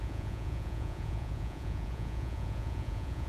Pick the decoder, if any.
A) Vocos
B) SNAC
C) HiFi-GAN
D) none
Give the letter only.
A